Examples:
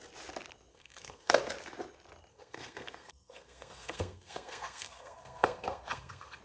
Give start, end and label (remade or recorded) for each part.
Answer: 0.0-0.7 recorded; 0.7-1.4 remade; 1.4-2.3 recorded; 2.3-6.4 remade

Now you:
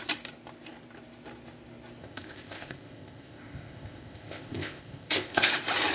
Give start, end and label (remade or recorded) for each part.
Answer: 0.0-2.0 recorded; 2.0-5.5 remade; 5.5-5.9 recorded

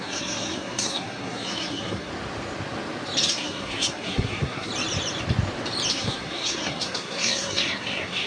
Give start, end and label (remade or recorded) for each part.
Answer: 0.0-2.1 remade; 2.1-3.3 recorded; 3.3-4.7 remade; 4.7-5.9 recorded; 5.9-8.3 remade

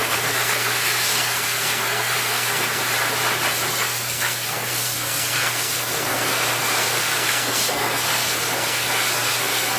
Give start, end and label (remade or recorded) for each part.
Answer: 0.0-2.8 remade; 2.8-3.7 recorded; 3.7-9.8 remade

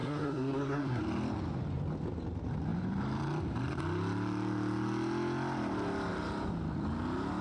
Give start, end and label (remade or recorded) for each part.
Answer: 0.0-1.0 remade; 1.0-7.4 recorded

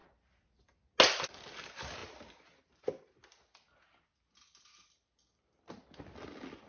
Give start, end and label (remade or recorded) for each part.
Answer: 0.0-6.7 recorded